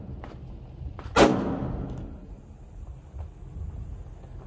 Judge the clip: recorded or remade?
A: recorded